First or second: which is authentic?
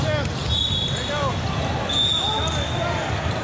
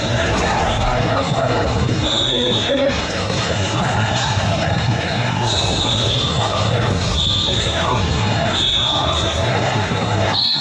first